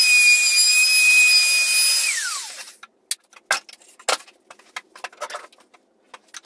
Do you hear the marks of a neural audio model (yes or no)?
no